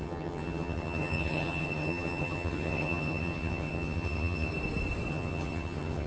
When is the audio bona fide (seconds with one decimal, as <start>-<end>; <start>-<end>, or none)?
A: 4.5-5.1